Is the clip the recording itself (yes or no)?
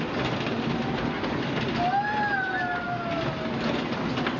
yes